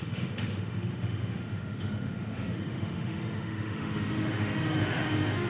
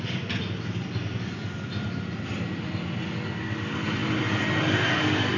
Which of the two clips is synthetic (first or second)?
first